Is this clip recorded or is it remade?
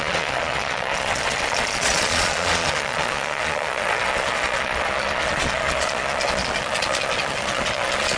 remade